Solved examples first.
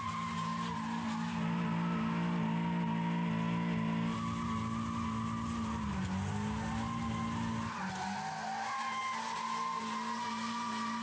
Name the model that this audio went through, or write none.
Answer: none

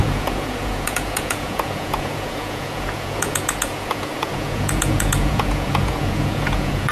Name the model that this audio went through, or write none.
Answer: vocoder, Vocos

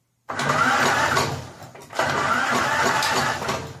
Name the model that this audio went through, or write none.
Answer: vocoder, BigVGAN v2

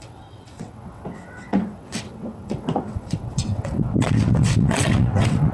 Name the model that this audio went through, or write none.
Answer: vocoder, WaveNeXt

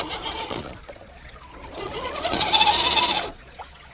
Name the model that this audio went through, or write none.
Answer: vocoder, Vocos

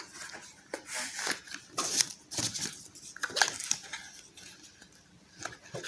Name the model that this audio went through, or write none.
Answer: none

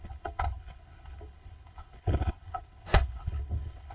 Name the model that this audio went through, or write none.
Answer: codec, HILCodec